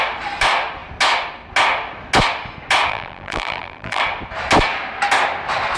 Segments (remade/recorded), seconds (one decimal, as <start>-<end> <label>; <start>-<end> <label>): 0.0-2.9 recorded; 2.9-4.0 remade; 4.0-5.8 recorded